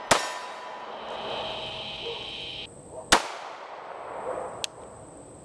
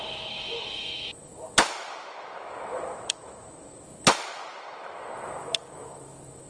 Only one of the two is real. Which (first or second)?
first